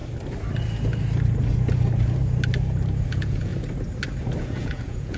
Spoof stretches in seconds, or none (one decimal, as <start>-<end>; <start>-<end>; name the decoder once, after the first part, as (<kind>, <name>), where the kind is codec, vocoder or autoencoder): 3.1-3.5 (vocoder, Vocos); 4.4-5.2